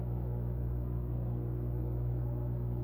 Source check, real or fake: fake